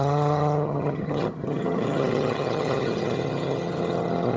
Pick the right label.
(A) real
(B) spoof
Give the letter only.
B